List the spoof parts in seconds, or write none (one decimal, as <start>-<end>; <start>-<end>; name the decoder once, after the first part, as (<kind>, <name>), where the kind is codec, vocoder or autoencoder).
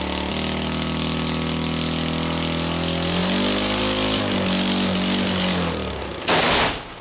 none